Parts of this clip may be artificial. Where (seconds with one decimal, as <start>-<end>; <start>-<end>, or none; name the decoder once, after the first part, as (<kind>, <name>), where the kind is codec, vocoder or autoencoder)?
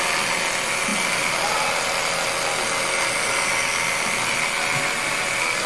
none